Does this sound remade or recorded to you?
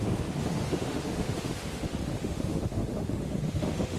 remade